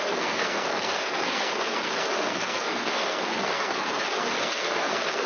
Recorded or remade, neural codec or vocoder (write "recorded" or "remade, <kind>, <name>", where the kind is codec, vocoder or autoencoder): remade, codec, SNAC